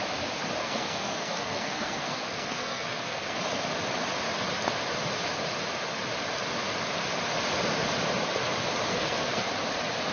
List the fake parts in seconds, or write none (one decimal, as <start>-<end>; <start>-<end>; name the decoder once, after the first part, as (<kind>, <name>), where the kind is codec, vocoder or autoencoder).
0.6-3.4 (codec, SNAC); 8.9-9.5